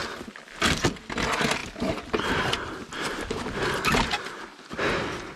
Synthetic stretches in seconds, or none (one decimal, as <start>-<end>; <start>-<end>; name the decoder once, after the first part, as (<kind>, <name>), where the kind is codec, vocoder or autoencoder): none